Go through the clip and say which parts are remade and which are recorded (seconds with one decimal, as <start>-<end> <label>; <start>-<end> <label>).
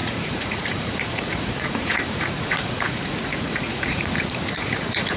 0.0-5.2 remade